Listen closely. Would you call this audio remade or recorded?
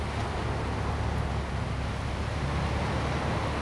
recorded